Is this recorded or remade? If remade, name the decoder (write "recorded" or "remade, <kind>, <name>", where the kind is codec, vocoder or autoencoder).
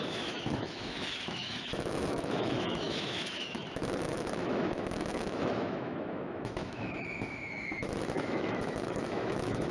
remade, autoencoder, DAC-VAE